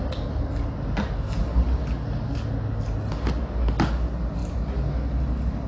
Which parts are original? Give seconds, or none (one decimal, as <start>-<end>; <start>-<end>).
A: 0.0-5.7